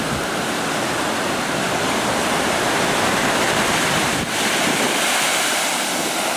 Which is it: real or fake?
fake